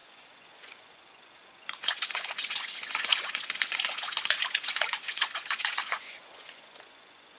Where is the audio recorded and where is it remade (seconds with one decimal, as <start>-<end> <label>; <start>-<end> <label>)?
0.0-7.4 remade